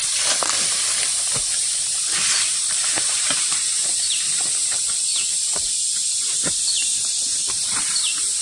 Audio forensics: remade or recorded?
remade